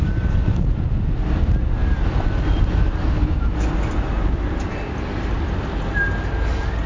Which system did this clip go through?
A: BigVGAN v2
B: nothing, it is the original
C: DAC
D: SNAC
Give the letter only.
B